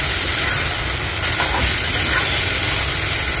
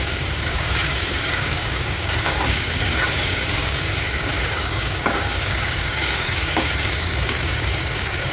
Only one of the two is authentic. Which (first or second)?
first